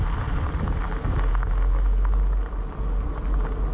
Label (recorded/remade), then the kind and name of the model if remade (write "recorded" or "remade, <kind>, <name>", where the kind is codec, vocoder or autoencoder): recorded